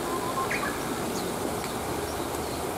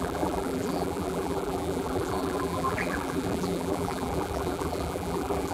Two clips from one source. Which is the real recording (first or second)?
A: first